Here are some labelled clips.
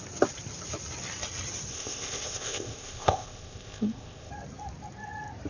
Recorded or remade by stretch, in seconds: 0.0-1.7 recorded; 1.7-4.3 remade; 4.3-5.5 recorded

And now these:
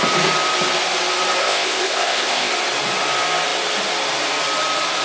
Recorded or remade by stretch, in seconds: 0.0-1.4 recorded; 1.4-2.5 remade; 2.5-5.0 recorded

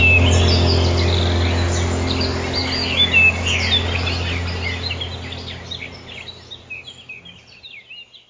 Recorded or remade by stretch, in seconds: 0.0-8.3 recorded

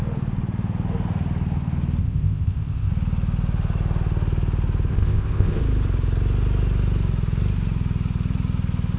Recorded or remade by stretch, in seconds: 0.0-2.0 recorded; 2.0-2.9 remade; 2.9-4.9 recorded; 4.9-5.6 remade; 5.6-9.0 recorded

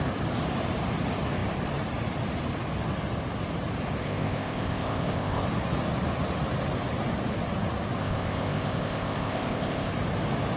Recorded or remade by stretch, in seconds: 0.0-4.0 recorded; 4.0-5.4 remade; 5.4-8.0 recorded; 8.0-9.9 remade; 9.9-10.6 recorded

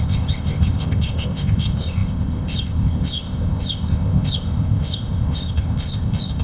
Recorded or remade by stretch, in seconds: 0.0-6.4 remade